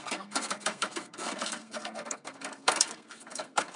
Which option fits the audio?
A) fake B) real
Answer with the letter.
A